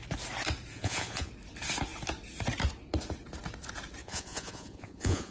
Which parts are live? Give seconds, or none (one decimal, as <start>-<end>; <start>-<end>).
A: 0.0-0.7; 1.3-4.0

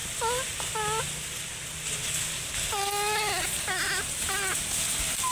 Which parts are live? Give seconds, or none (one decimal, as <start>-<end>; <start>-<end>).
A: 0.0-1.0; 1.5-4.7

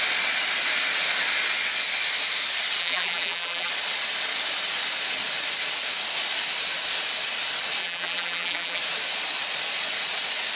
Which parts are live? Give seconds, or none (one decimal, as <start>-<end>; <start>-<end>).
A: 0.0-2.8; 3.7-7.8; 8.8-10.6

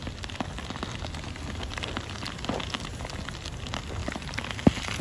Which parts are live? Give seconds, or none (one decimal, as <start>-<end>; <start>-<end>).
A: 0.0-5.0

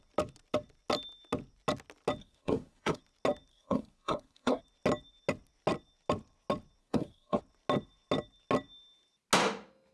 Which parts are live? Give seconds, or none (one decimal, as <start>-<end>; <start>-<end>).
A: 0.0-2.2; 3.0-3.5; 4.6-6.8; 7.4-9.9

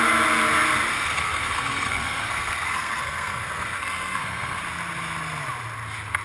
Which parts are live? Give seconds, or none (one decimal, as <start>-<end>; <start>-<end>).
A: 0.0-0.9; 4.6-6.2